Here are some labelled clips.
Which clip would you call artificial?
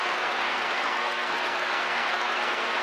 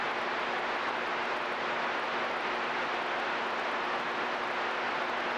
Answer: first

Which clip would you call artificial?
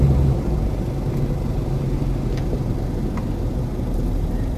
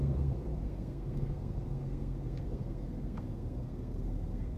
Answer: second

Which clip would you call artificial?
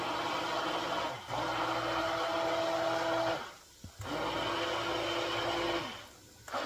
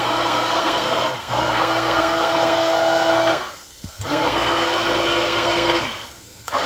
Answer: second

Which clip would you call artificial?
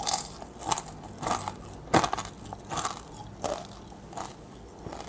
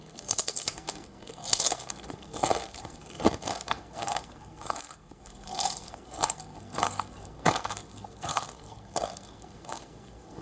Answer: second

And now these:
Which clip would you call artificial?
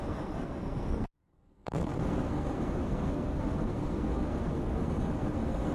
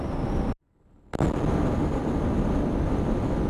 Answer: first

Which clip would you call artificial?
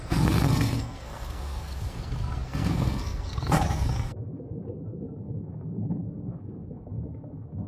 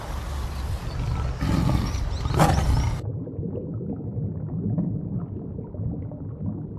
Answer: first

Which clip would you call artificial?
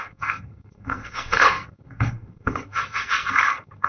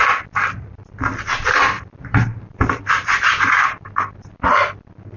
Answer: first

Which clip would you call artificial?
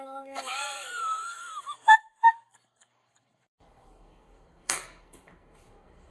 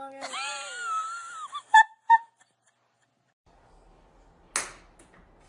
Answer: first